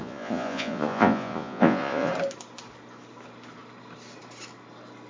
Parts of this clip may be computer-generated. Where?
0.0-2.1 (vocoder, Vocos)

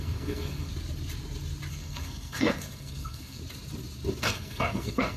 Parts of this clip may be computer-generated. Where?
0.0-0.7 (codec, SNAC); 1.7-3.4; 4.2-5.2

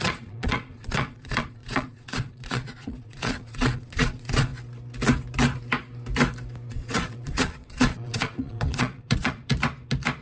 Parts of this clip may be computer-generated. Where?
0.0-4.5 (vocoder, Vocos); 6.7-9.5